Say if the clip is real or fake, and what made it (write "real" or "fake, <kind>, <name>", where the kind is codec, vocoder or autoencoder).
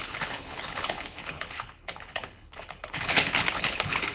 fake, codec, HILCodec